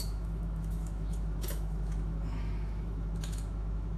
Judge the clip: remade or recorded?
remade